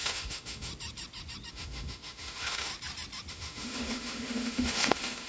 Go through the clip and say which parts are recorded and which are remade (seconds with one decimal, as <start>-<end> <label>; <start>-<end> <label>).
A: 0.0-0.7 remade; 0.7-1.5 recorded; 1.5-2.7 remade; 2.7-3.3 recorded; 3.3-5.3 remade